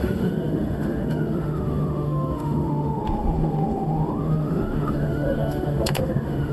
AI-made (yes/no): yes